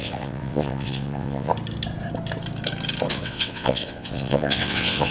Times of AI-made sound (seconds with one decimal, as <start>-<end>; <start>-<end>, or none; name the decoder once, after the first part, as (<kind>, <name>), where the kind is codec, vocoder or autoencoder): 0.0-1.5 (vocoder, WaveNeXt); 3.1-5.1